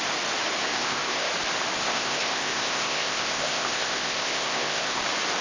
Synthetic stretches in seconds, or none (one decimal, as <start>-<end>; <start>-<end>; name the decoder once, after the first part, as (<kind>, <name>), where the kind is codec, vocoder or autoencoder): 0.7-1.3 (codec, ZipCodec); 1.8-5.0